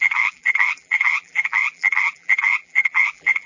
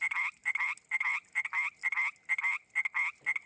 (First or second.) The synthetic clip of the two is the first